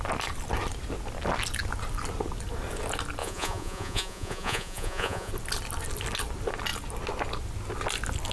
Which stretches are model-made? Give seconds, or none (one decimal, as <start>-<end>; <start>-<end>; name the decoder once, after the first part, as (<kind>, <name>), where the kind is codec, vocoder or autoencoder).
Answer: 3.2-5.3 (vocoder, Vocos)